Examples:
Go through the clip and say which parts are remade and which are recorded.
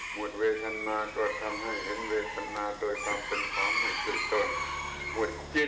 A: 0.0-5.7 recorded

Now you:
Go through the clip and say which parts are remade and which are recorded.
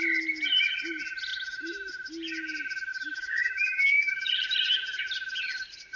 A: 0.0-1.3 recorded; 1.3-1.9 remade; 1.9-2.9 recorded; 2.9-4.1 remade; 4.1-6.0 recorded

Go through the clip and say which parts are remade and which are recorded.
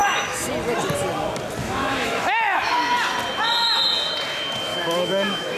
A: 0.0-0.5 remade; 0.5-1.6 recorded; 1.6-2.7 remade; 2.7-4.7 recorded; 4.7-5.6 remade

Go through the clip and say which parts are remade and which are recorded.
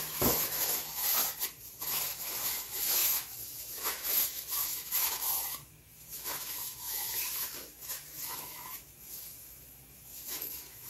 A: 0.0-1.2 remade; 1.2-1.8 recorded; 1.8-10.9 remade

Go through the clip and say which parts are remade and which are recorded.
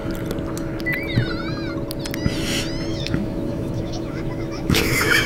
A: 0.0-2.9 recorded; 2.9-5.3 remade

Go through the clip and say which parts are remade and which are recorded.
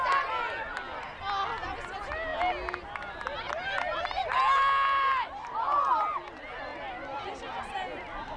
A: 0.0-8.4 recorded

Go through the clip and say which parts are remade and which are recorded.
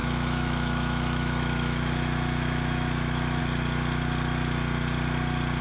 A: 0.0-3.4 remade; 3.4-5.6 recorded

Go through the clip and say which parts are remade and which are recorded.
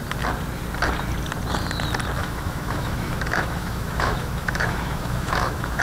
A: 0.0-2.2 recorded; 2.2-5.8 remade